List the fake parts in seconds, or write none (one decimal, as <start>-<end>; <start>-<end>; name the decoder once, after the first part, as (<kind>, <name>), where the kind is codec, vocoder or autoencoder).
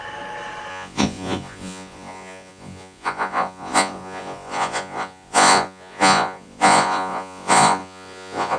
0.7-8.6 (vocoder, Vocos)